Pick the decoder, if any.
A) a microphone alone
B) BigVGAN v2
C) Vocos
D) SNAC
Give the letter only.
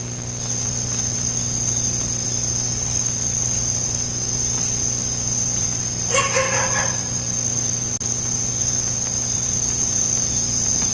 A